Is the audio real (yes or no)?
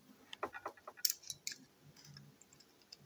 yes